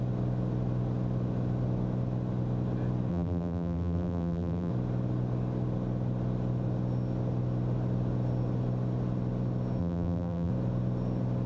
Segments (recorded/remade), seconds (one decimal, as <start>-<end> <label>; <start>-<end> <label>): 0.0-3.1 recorded; 3.1-4.7 remade; 4.7-9.8 recorded; 9.8-10.5 remade; 10.5-11.5 recorded